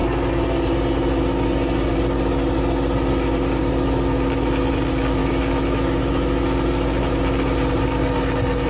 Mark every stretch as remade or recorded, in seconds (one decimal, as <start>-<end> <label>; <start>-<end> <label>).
0.0-5.2 recorded; 5.2-6.1 remade; 6.1-8.7 recorded